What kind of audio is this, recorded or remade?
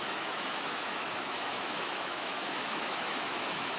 remade